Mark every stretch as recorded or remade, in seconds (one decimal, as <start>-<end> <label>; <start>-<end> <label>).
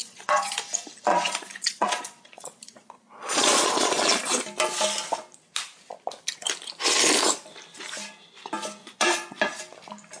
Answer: 0.0-0.6 remade; 0.6-1.1 recorded; 1.1-4.2 remade; 4.2-8.8 recorded; 8.8-9.4 remade; 9.4-10.2 recorded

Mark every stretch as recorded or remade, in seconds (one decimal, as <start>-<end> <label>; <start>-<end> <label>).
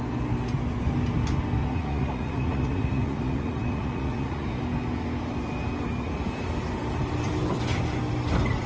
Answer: 0.0-1.6 recorded; 1.6-4.6 remade; 4.6-8.7 recorded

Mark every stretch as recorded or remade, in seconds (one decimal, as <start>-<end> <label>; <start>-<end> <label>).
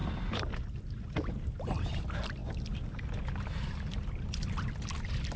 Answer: 0.0-5.4 recorded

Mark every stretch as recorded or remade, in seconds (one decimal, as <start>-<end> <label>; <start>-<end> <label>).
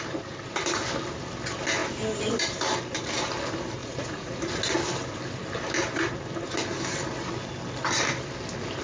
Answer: 0.0-3.8 recorded; 3.8-4.4 remade; 4.4-8.8 recorded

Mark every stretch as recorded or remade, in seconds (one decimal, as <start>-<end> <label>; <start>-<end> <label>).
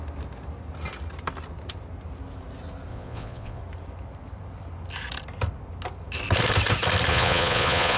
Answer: 0.0-2.9 recorded; 2.9-3.6 remade; 3.6-7.1 recorded; 7.1-8.0 remade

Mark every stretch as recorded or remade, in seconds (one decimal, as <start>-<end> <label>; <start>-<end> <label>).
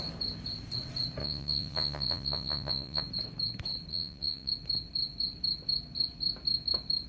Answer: 0.0-1.2 recorded; 1.2-3.0 remade; 3.0-3.9 recorded; 3.9-4.5 remade; 4.5-7.1 recorded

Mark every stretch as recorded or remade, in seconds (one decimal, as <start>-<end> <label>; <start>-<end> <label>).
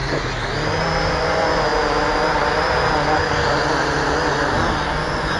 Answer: 0.0-1.1 recorded; 1.1-1.7 remade; 1.7-4.9 recorded; 4.9-5.4 remade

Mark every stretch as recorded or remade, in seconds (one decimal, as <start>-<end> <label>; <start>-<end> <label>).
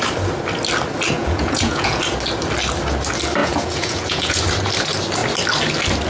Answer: 0.0-1.2 recorded; 1.2-2.0 remade; 2.0-3.4 recorded; 3.4-4.4 remade; 4.4-6.1 recorded